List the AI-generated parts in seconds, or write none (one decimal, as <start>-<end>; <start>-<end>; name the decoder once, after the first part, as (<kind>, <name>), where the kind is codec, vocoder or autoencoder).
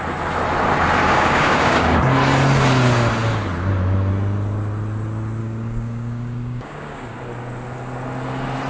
1.0-2.0 (codec, DAC); 5.4-7.2